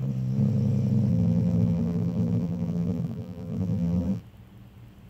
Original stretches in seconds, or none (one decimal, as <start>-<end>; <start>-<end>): 0.0-1.1; 4.2-5.1